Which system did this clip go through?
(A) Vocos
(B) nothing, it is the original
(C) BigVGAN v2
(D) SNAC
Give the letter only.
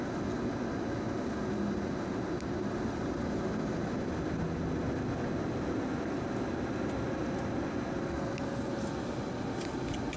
B